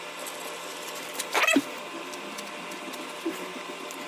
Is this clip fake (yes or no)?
no